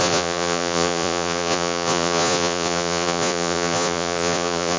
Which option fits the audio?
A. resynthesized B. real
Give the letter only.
A